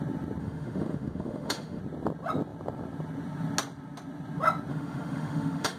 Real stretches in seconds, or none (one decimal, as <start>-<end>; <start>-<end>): 0.0-0.4; 1.8-4.7